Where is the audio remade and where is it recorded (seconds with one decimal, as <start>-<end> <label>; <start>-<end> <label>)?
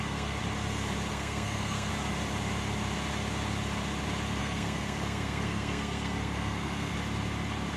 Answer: 0.0-0.4 remade; 0.4-1.1 recorded; 1.1-1.9 remade; 1.9-4.4 recorded; 4.4-6.9 remade; 6.9-7.8 recorded